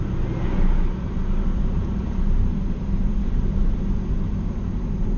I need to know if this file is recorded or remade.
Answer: recorded